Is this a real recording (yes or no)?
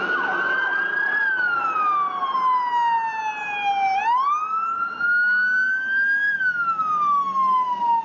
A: yes